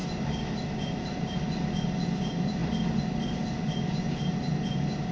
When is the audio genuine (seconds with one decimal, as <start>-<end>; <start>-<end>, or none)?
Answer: 0.0-5.1